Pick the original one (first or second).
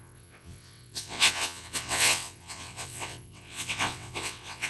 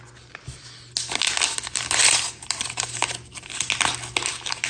second